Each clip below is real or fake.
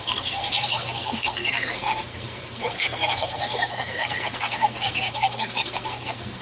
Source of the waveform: fake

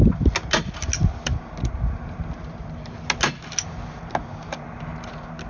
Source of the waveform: real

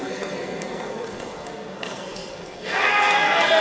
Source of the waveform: fake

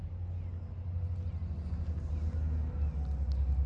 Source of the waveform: real